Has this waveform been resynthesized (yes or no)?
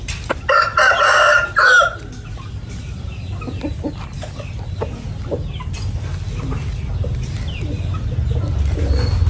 no